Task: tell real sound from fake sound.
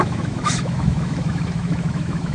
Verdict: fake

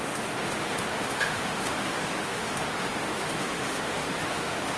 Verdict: fake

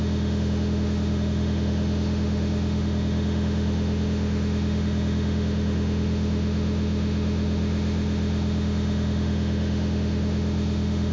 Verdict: fake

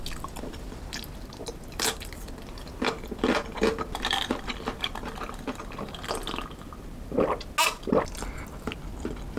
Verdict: real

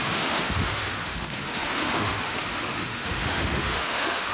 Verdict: fake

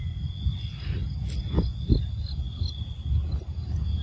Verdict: real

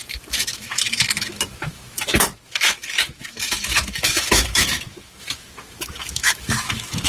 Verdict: fake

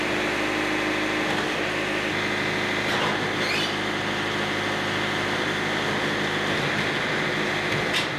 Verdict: real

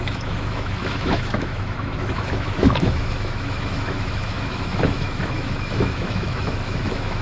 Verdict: fake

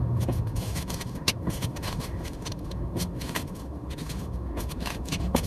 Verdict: fake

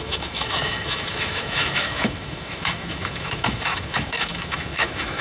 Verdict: fake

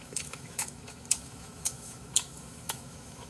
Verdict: fake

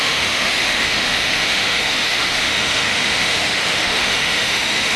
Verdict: fake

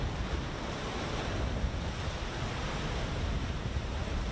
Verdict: real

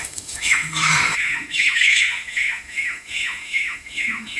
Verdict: fake